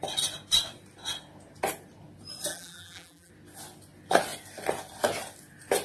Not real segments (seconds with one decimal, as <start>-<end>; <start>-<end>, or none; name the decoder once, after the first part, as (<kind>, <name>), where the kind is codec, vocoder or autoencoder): 2.5-3.3 (vocoder, BigVGAN v2)